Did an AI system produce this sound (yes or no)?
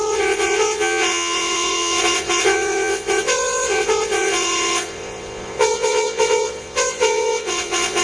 yes